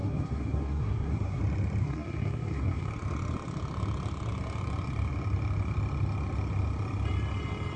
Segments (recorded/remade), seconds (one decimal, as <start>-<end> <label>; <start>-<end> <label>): 0.0-1.4 remade; 1.4-1.8 recorded; 1.8-2.9 remade; 2.9-7.8 recorded